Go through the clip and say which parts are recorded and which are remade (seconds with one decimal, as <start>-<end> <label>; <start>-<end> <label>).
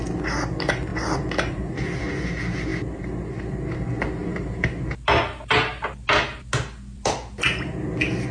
0.0-0.9 recorded; 0.9-2.0 remade; 2.0-4.2 recorded; 4.2-4.8 remade; 4.8-8.3 recorded